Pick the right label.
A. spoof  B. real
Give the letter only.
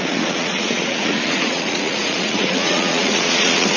A